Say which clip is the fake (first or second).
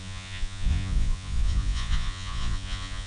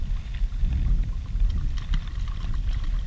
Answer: first